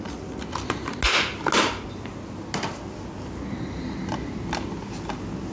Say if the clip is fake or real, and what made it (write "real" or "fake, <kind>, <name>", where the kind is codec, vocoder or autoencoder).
real